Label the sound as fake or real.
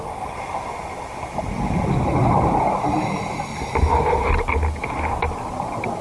real